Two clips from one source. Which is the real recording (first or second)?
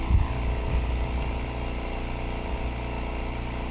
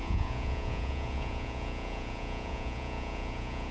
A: first